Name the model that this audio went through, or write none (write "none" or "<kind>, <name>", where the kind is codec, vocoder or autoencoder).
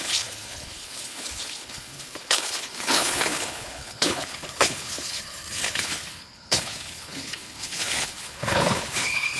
codec, HILCodec